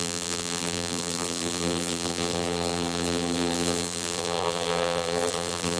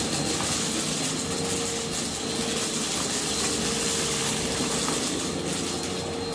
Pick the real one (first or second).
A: second